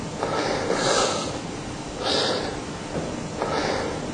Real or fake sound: real